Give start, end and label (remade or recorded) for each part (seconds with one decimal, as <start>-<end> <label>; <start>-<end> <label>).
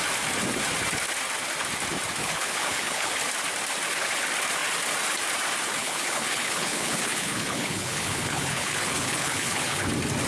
0.0-2.2 recorded; 2.2-3.1 remade; 3.1-5.8 recorded; 5.8-9.9 remade; 9.9-10.3 recorded